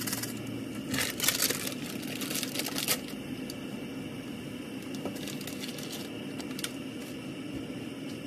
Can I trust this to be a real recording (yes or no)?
yes